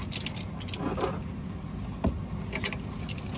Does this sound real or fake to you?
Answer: real